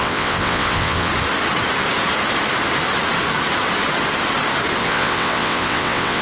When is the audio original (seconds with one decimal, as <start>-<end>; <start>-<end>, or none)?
1.1-4.8